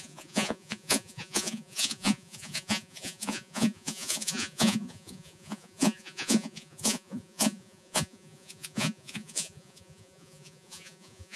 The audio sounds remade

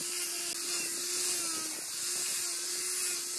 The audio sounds recorded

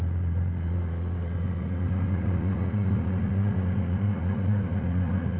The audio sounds remade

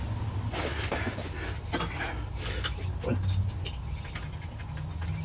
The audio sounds recorded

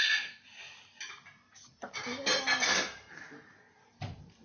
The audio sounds recorded